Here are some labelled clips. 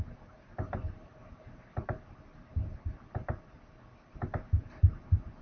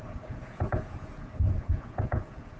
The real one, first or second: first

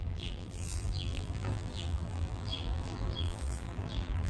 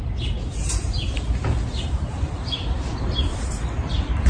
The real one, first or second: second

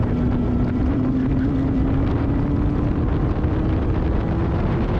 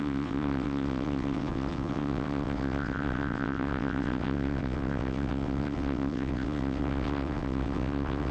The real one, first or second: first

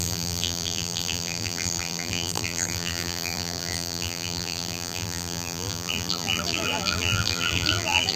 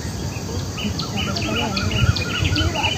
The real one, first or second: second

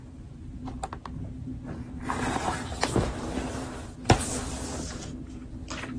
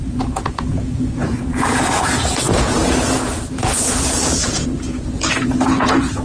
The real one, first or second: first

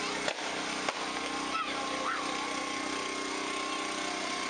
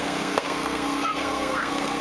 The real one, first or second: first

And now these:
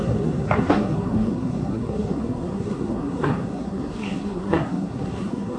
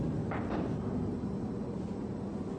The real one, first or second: second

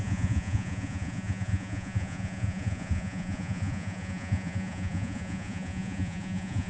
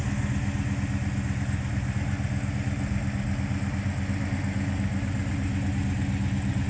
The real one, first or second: second